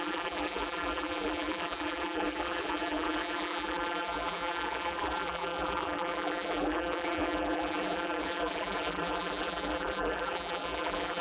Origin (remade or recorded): remade